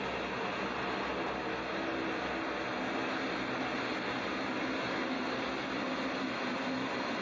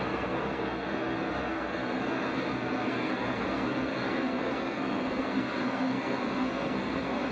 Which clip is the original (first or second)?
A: first